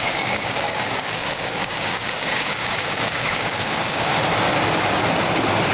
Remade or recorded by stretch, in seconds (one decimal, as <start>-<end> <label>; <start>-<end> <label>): 0.0-4.1 remade; 4.1-5.7 recorded